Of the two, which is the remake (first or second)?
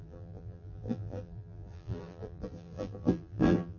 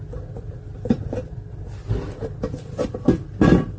first